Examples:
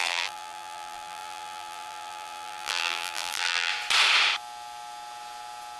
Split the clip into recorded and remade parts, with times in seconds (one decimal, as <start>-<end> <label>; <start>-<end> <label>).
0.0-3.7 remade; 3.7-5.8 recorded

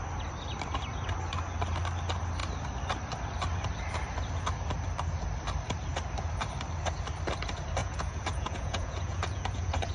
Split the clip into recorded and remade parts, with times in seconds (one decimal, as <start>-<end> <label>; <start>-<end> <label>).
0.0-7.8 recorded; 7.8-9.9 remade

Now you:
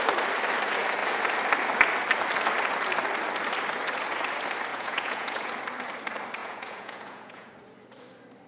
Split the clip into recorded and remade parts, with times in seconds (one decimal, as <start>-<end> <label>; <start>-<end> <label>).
0.0-4.7 recorded; 4.7-5.5 remade; 5.5-6.4 recorded; 6.4-7.5 remade; 7.5-8.5 recorded

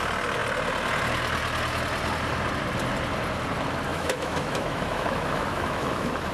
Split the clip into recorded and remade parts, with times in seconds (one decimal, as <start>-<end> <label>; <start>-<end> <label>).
0.0-3.9 recorded; 3.9-6.3 remade

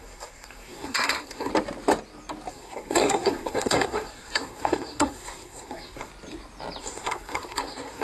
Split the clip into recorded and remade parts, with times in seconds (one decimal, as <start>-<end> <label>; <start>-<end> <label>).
0.0-1.5 remade; 1.5-2.5 recorded; 2.5-6.1 remade; 6.1-6.8 recorded; 6.8-8.0 remade